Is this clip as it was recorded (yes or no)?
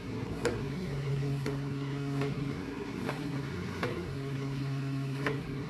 no